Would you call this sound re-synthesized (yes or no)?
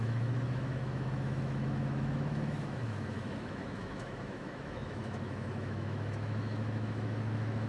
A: yes